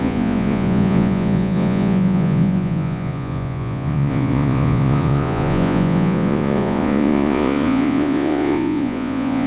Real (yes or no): no